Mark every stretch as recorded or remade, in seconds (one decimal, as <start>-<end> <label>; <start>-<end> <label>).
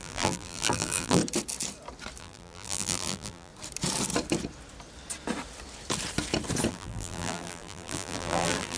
0.0-1.2 remade; 1.2-2.2 recorded; 2.2-3.5 remade; 3.5-6.7 recorded; 6.7-8.8 remade